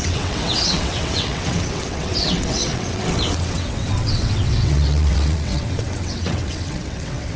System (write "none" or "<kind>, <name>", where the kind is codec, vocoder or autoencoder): vocoder, WaveNeXt